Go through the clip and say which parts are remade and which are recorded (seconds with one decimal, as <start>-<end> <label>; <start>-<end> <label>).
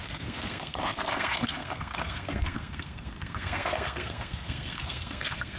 0.0-5.6 remade